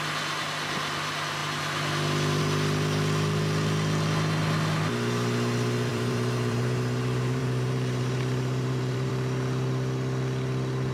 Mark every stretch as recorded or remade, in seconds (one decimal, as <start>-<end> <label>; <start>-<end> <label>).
0.0-5.9 recorded; 5.9-9.1 remade; 9.1-10.9 recorded